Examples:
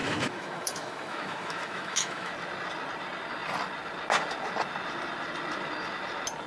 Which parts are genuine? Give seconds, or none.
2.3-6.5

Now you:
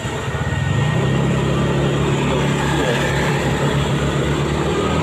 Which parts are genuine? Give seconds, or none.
0.0-2.8

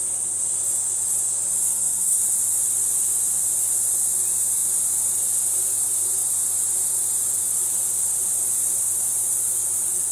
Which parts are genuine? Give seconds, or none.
0.0-1.7; 2.2-10.1

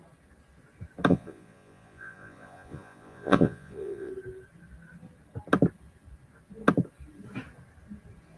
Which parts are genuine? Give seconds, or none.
0.0-1.1; 4.1-8.4

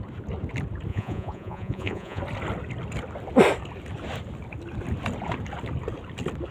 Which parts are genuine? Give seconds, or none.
0.0-0.9; 2.2-6.5

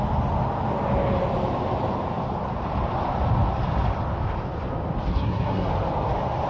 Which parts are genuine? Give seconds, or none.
0.0-5.1; 5.7-6.5

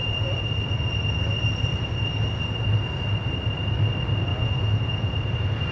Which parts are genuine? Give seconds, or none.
0.0-4.3; 5.1-5.7

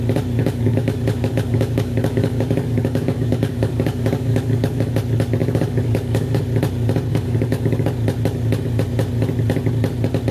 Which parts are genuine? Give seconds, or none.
0.0-0.4; 4.9-5.4; 6.4-7.1; 7.9-10.3